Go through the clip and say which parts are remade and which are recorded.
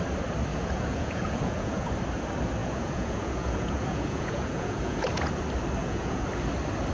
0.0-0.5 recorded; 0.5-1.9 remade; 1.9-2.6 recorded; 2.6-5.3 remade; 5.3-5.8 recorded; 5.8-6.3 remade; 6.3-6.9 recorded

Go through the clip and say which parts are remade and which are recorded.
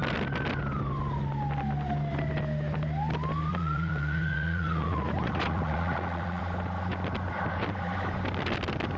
0.0-3.5 recorded; 3.5-6.4 remade; 6.4-9.0 recorded